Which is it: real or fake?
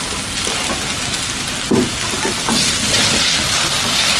real